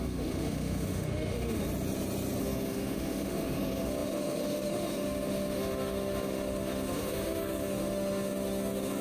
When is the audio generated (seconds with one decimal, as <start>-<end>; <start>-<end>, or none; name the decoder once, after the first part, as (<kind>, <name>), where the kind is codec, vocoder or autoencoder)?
0.0-1.7 (autoencoder, DAC-VAE); 2.4-9.0